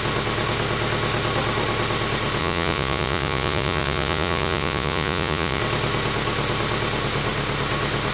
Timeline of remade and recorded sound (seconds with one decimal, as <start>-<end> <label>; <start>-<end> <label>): 0.0-2.4 recorded; 2.4-5.6 remade; 5.6-8.1 recorded